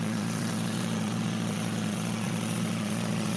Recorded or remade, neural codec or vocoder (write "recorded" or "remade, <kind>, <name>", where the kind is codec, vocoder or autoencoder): remade, vocoder, Vocos